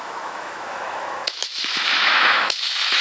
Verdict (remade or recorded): remade